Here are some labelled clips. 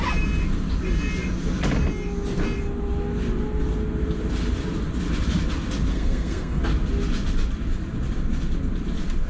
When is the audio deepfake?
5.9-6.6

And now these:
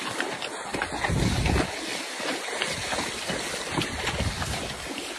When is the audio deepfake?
none

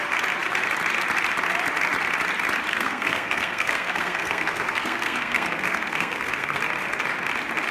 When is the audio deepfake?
2.7-6.6

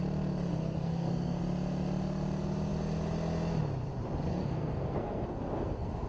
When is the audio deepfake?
0.5-1.4; 4.3-6.1